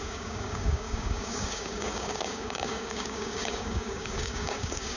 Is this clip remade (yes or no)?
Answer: yes